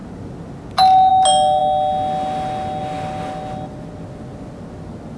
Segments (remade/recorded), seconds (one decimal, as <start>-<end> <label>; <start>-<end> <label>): 0.0-5.2 recorded